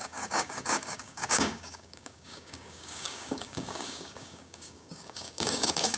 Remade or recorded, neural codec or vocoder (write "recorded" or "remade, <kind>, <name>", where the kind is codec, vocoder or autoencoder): remade, codec, DAC